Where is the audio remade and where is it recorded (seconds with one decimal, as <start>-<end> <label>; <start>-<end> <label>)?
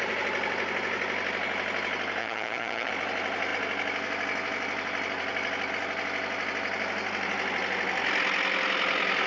0.0-2.2 recorded; 2.2-2.9 remade; 2.9-9.3 recorded